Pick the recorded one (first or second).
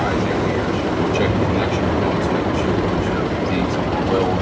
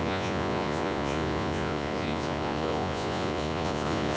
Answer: first